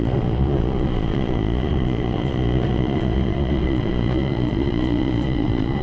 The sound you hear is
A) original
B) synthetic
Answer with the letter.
B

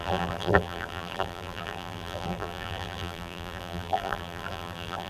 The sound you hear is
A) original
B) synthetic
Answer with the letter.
B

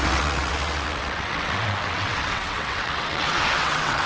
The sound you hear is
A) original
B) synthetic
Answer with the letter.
B